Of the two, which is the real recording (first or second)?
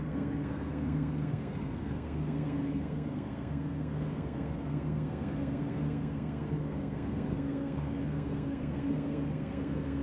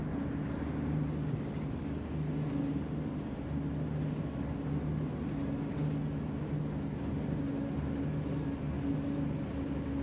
second